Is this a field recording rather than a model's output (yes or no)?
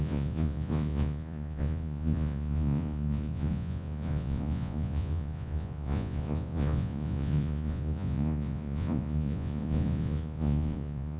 no